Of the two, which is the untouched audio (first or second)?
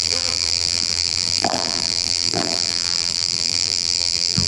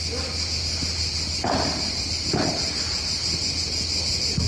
second